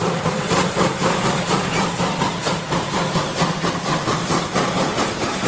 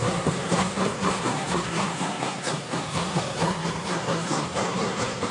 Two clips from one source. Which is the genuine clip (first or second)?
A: first